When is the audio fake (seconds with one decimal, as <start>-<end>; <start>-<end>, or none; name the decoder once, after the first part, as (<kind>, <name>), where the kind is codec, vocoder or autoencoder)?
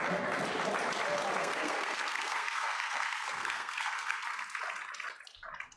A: 1.4-4.2 (codec, SNAC)